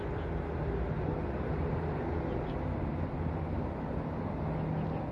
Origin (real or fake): real